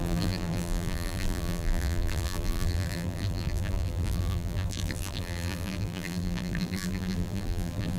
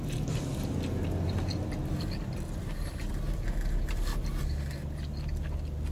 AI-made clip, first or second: first